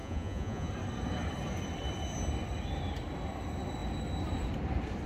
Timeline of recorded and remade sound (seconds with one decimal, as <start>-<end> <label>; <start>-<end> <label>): 0.0-0.7 remade; 0.7-5.1 recorded

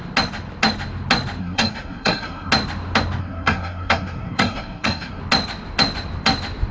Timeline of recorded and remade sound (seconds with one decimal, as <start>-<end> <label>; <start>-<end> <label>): 0.0-1.4 recorded; 1.4-2.5 remade; 2.5-3.2 recorded; 3.2-5.2 remade; 5.2-6.7 recorded

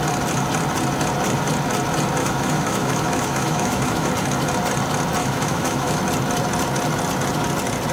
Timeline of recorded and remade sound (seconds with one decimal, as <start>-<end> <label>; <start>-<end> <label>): 0.0-2.2 recorded; 2.2-4.1 remade; 4.1-5.2 recorded; 5.2-6.0 remade; 6.0-7.9 recorded

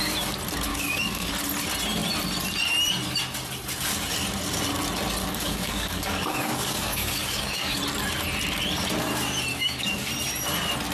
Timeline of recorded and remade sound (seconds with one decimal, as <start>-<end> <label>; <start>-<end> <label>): 0.0-0.7 recorded; 0.7-1.3 remade; 1.3-5.2 recorded; 5.2-7.8 remade; 7.8-9.5 recorded; 9.5-10.1 remade; 10.1-10.9 recorded

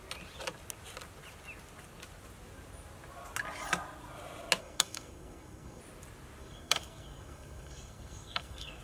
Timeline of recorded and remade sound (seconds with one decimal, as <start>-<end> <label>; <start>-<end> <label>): 0.0-4.6 recorded; 4.6-5.8 remade; 5.8-6.4 recorded; 6.4-8.8 remade

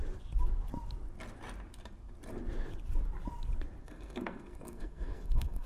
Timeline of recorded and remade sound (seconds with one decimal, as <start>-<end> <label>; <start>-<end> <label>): 0.0-3.8 recorded; 3.8-5.7 remade

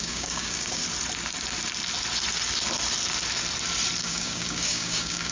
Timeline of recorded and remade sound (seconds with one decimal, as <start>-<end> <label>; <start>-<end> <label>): 0.0-0.8 remade; 0.8-4.0 recorded; 4.0-5.3 remade